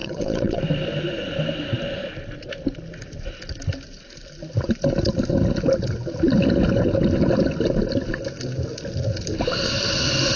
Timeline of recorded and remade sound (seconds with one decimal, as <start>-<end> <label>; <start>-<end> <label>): 0.0-0.6 remade; 0.6-10.4 recorded